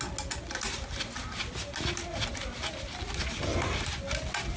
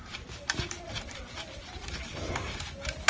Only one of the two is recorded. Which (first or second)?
first